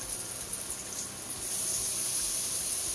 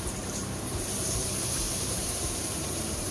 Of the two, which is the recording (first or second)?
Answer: first